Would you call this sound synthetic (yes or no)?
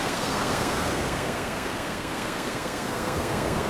yes